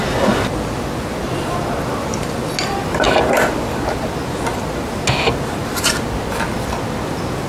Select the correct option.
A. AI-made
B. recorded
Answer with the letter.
B